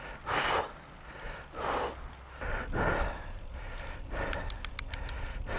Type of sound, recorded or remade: recorded